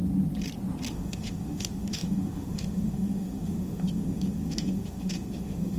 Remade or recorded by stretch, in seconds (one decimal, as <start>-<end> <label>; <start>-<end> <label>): 0.0-0.9 recorded; 0.9-5.8 remade